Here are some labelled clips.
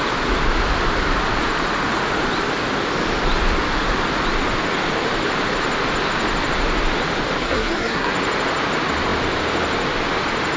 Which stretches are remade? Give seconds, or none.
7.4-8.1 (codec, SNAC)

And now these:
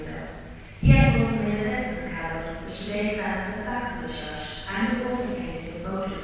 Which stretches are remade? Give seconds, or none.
none

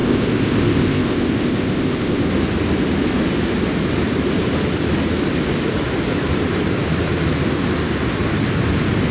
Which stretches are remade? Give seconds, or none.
0.0-2.3 (codec, ZipCodec)

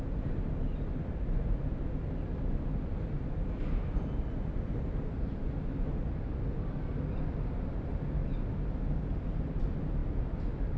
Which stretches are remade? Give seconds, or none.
none